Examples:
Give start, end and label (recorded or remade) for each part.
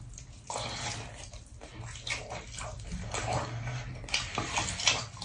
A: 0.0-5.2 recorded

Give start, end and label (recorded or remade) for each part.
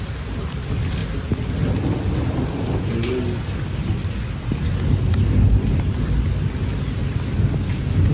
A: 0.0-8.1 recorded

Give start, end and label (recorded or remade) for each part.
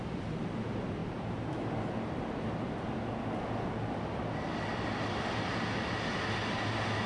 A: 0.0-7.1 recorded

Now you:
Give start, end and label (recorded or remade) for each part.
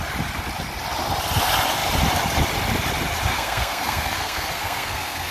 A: 0.0-3.3 recorded; 3.3-5.3 remade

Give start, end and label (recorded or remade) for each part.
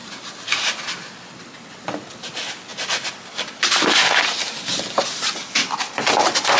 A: 0.0-6.6 recorded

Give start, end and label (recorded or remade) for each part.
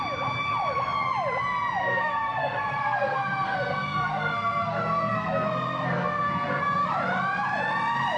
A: 0.0-1.8 recorded; 1.8-6.6 remade; 6.6-8.2 recorded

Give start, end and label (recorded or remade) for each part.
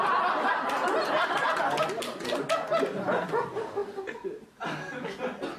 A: 0.0-5.6 recorded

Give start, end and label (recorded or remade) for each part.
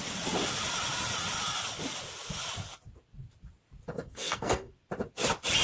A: 0.0-3.9 recorded; 3.9-4.7 remade; 4.7-5.6 recorded